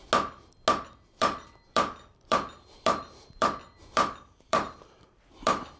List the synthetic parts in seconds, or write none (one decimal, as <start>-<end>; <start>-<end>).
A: 0.7-5.8